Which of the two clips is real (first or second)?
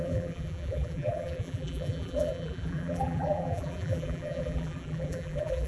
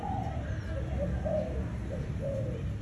second